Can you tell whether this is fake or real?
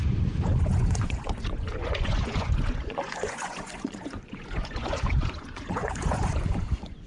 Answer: fake